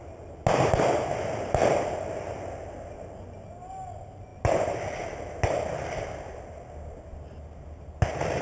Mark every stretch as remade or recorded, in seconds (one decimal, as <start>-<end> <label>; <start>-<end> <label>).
0.0-8.4 recorded